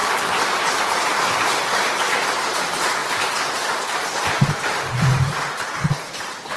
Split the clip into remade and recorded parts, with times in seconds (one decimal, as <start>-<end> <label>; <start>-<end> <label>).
0.0-0.8 recorded; 0.8-3.0 remade; 3.0-3.7 recorded; 3.7-6.6 remade